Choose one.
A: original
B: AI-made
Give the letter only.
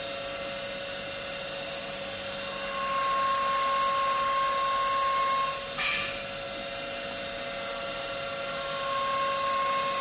A